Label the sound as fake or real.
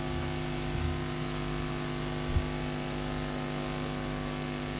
real